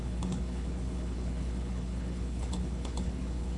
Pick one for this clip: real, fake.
fake